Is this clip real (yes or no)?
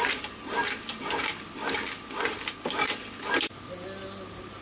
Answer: yes